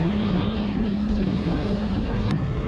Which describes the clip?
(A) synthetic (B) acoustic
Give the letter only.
A